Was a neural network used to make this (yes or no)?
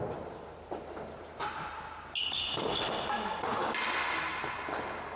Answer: no